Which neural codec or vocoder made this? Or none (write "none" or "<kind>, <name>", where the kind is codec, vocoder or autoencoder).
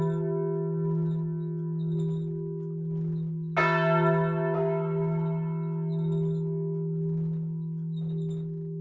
none